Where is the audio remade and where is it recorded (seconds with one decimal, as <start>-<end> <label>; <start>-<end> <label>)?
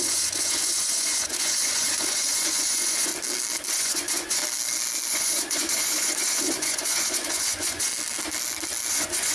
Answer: 0.0-3.1 remade; 3.1-3.7 recorded; 3.7-4.4 remade; 4.4-5.1 recorded; 5.1-7.9 remade; 7.9-8.9 recorded; 8.9-9.3 remade